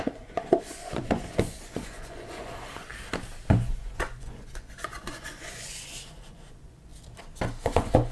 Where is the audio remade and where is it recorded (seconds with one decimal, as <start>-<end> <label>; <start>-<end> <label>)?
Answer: 0.0-2.9 remade; 2.9-3.5 recorded; 3.5-6.9 remade; 6.9-7.6 recorded; 7.6-8.1 remade